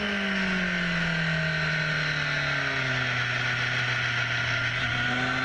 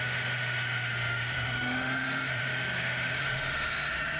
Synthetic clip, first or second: second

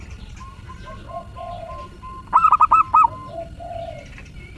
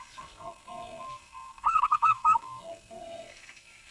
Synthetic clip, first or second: second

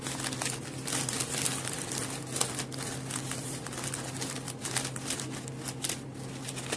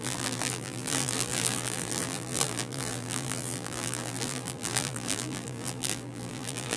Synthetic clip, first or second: second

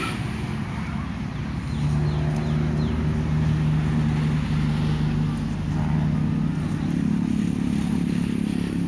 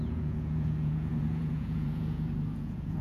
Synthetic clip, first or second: second